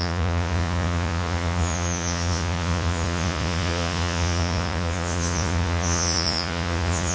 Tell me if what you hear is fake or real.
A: fake